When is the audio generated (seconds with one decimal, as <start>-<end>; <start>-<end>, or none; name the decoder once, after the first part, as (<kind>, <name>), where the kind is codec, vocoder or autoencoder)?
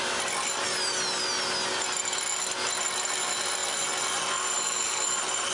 none